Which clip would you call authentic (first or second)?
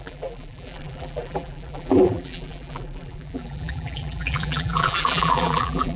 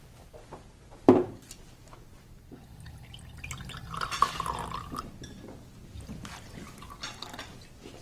second